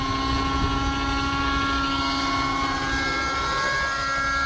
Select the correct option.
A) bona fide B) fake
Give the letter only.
A